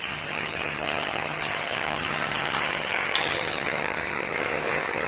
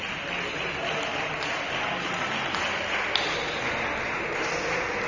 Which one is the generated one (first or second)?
first